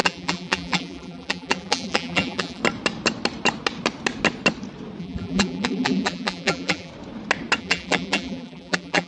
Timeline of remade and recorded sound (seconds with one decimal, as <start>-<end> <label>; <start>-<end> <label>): 0.0-2.6 remade; 2.6-5.0 recorded; 5.0-6.9 remade; 6.9-7.6 recorded; 7.6-9.1 remade